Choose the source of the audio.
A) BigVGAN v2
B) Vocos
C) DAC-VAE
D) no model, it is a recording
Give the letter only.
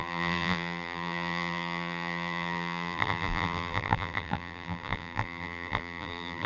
A